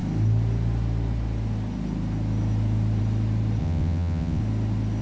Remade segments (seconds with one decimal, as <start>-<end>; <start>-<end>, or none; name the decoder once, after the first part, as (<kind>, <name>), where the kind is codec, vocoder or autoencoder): 3.6-4.4 (vocoder, WaveNeXt)